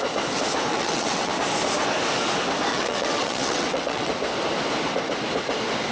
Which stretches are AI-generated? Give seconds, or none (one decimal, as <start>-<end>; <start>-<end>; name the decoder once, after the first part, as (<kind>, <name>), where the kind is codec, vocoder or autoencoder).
0.7-1.3 (vocoder, WaveNeXt); 2.7-4.1